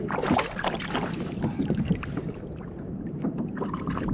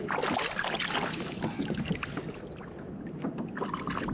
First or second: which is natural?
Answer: second